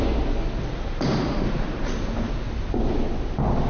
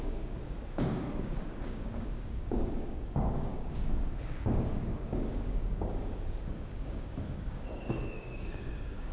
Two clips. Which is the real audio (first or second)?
first